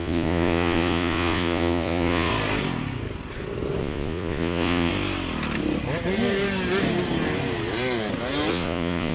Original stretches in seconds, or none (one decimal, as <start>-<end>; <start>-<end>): 2.3-3.8; 4.9-8.5